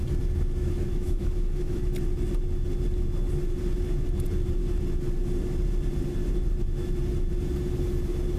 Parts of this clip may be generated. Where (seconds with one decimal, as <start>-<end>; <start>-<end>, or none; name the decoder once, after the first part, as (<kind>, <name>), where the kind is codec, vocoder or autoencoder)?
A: 0.6-1.8 (autoencoder, DAC-VAE)

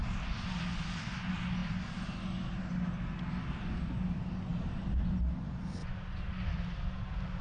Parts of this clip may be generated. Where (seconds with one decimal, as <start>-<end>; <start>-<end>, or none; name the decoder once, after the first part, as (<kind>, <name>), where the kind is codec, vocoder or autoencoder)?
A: 4.5-5.2 (vocoder, BigVGAN v2); 5.8-6.8

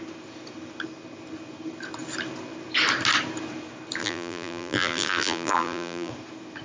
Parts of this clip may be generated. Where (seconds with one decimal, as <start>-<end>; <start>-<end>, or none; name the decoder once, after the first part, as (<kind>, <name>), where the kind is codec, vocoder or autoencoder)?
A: 4.0-6.1 (vocoder, BigVGAN v2)

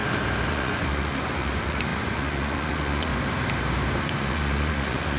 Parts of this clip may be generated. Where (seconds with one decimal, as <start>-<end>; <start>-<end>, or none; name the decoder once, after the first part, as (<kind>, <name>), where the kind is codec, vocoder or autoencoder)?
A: 0.5-3.1 (vocoder, Vocos); 4.0-5.2

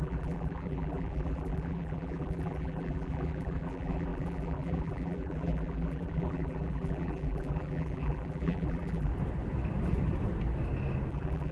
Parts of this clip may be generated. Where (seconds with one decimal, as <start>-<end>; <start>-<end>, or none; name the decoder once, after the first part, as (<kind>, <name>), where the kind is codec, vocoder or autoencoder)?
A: 0.0-9.1 (vocoder, BigVGAN v2); 11.1-11.5

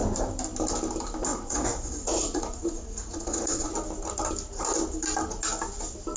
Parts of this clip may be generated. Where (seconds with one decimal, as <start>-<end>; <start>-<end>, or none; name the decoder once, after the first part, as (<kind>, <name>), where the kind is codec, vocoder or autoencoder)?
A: 1.3-3.7 (vocoder, Vocos)